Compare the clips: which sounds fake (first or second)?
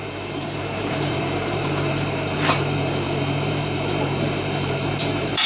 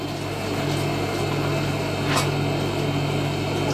first